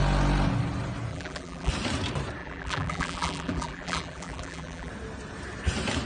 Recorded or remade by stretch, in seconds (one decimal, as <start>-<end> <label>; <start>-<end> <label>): 0.0-1.1 recorded; 1.1-1.7 remade; 1.7-2.4 recorded; 2.4-4.9 remade; 4.9-6.1 recorded

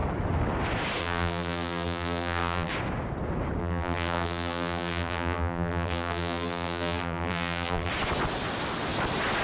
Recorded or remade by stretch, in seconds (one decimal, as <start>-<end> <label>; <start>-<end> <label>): 0.0-1.0 recorded; 1.0-2.7 remade; 2.7-3.6 recorded; 3.6-7.9 remade; 7.9-9.4 recorded

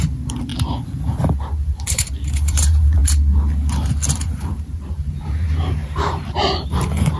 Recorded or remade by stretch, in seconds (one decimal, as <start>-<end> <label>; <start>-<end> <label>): 0.0-0.5 remade; 0.5-1.4 recorded; 1.4-3.0 remade; 3.0-4.1 recorded; 4.1-7.2 remade

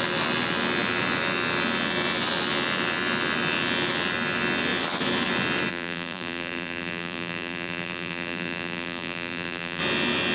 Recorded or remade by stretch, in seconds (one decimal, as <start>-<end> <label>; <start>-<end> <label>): 0.0-5.7 recorded; 5.7-9.8 remade; 9.8-10.3 recorded

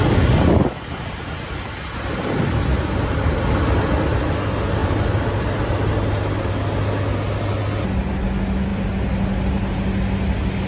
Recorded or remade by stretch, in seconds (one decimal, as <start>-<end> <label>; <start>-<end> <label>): 0.0-10.7 recorded

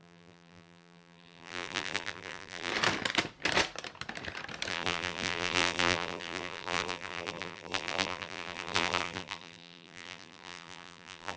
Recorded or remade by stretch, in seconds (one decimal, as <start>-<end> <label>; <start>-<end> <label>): 0.0-2.7 remade; 2.7-4.7 recorded; 4.7-11.4 remade

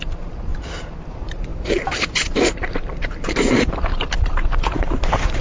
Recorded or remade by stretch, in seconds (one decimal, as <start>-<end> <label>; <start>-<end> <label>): 0.0-0.5 remade; 0.5-1.1 recorded; 1.1-5.4 remade

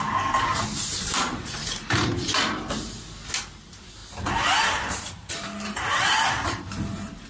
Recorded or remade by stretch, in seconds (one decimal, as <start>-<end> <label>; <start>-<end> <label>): 0.0-0.9 recorded; 0.9-2.1 remade; 2.1-4.0 recorded; 4.0-7.3 remade